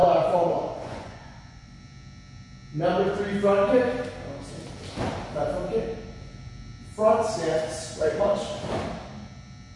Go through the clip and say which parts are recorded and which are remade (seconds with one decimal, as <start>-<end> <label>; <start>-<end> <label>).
0.0-1.8 remade; 1.8-9.8 recorded